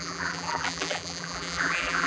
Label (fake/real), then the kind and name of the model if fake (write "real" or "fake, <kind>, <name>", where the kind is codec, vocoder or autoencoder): fake, vocoder, BigVGAN v2